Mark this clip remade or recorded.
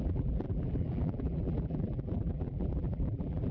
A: remade